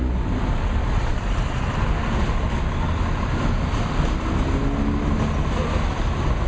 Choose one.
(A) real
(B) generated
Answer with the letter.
A